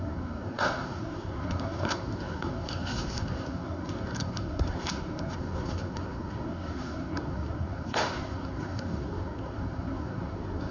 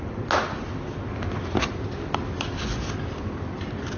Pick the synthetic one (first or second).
first